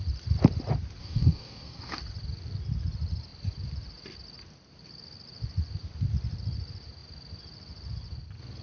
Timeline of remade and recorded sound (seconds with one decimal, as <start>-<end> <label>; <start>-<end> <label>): 0.0-1.0 recorded; 1.0-2.0 remade; 2.0-8.6 recorded